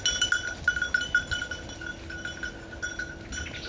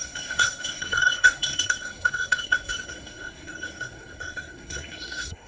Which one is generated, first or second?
second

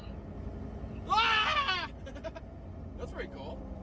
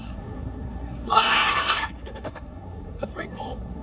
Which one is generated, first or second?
second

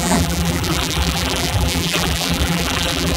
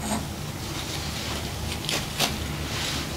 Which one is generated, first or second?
first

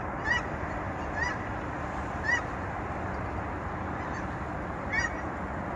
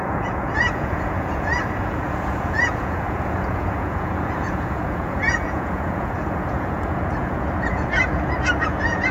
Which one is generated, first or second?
second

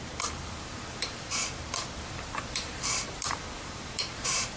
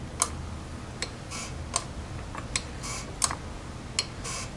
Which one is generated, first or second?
first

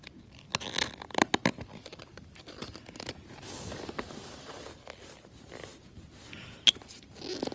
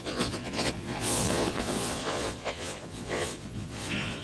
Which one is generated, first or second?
second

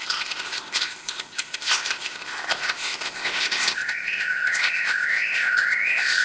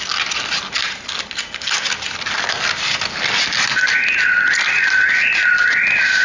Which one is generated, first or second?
first